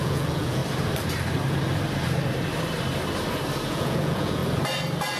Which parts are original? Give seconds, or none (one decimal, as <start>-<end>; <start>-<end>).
0.6-3.7; 4.4-5.2